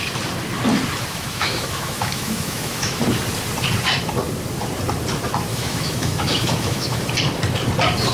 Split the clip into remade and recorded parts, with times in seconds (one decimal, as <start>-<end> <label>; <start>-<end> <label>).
0.0-1.1 recorded; 1.1-3.0 remade; 3.0-5.5 recorded; 5.5-7.0 remade; 7.0-8.1 recorded